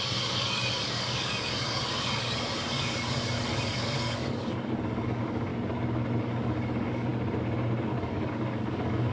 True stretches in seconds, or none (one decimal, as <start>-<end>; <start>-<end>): 5.5-6.2; 7.1-8.0

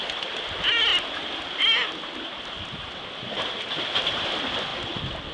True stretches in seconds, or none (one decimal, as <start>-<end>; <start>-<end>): 0.0-5.3

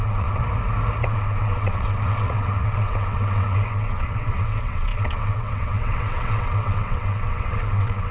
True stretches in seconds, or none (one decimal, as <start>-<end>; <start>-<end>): 0.4-1.0

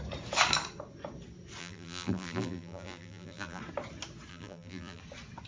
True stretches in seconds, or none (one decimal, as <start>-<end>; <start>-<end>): 0.0-1.6; 3.6-4.3; 5.0-5.5